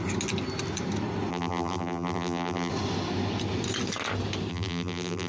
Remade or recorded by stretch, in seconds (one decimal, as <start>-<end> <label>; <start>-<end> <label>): 0.0-1.3 recorded; 1.3-2.7 remade; 2.7-4.5 recorded; 4.5-5.3 remade